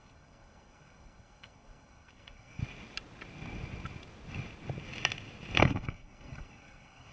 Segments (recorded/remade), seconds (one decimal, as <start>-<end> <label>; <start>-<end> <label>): 0.0-2.6 remade; 2.6-5.6 recorded; 5.6-7.1 remade